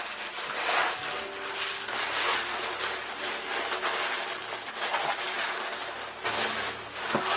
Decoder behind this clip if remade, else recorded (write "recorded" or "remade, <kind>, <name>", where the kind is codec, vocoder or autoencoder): recorded